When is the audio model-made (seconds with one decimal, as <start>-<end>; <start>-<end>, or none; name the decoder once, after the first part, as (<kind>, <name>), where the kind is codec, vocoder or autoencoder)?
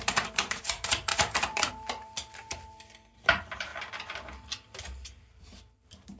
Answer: 0.0-3.7 (vocoder, BigVGAN v2); 4.8-6.2